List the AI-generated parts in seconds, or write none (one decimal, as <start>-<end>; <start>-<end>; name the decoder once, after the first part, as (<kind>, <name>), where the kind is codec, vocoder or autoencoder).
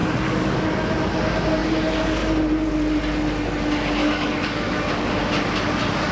0.0-0.6 (codec, DAC); 4.0-5.1